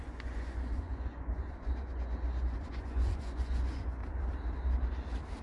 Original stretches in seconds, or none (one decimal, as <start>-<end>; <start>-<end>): 4.0-5.4